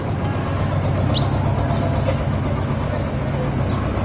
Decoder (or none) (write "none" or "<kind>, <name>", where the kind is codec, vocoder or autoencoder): none